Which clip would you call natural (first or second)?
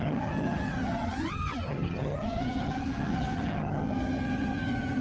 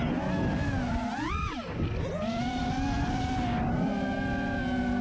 second